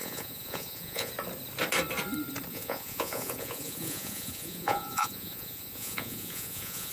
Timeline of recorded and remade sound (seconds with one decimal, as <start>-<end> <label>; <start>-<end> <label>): 0.0-1.1 remade; 1.1-2.5 recorded; 2.5-6.9 remade